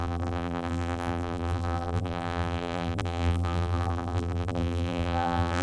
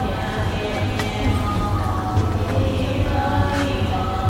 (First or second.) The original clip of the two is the second